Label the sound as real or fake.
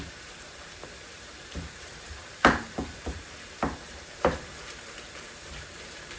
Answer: fake